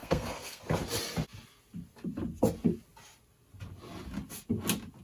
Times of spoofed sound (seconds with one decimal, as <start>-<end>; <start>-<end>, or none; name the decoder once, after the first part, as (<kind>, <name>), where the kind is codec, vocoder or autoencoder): 0.0-0.6 (codec, SNAC)